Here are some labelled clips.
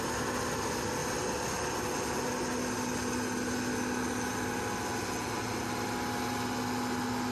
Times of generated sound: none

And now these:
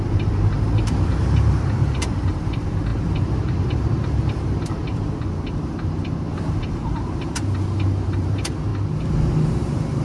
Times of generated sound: 0.0-4.9 (vocoder, BigVGAN v2); 5.6-8.7; 9.6-10.0

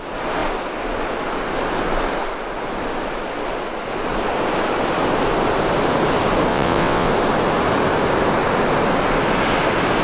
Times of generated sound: 6.5-7.1 (vocoder, WaveNeXt)

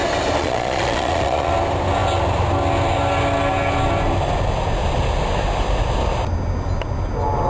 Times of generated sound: 0.4-1.5 (vocoder, Vocos)

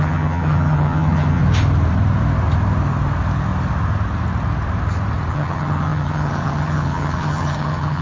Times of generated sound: 0.0-1.4 (vocoder, HiFi-GAN); 5.3-8.0

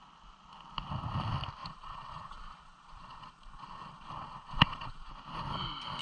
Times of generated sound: 1.6-5.1 (vocoder, Vocos)